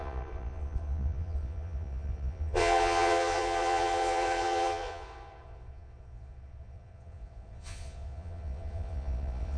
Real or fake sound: fake